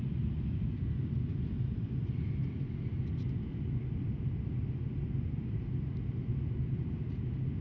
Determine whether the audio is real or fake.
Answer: real